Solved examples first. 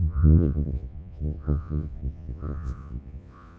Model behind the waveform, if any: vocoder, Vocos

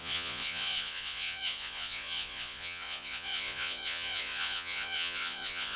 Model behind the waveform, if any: vocoder, Vocos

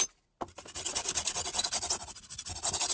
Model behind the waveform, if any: none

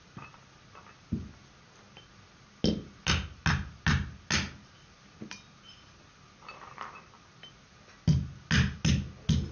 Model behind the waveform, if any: none